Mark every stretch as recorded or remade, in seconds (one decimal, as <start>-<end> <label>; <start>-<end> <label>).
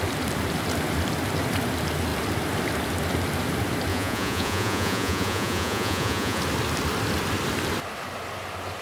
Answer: 0.0-3.9 recorded; 3.9-6.4 remade; 6.4-8.8 recorded